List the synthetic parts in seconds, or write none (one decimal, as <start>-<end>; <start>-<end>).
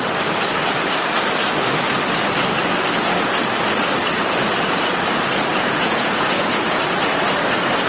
5.5-6.8